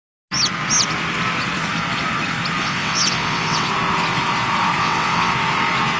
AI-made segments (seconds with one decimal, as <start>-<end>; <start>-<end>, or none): 2.6-3.7; 4.8-5.3